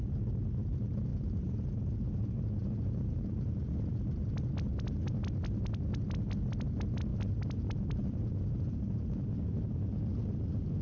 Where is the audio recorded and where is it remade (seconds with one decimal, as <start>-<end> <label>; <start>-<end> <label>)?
0.0-1.1 recorded; 1.1-3.5 remade; 3.5-7.1 recorded; 7.1-10.8 remade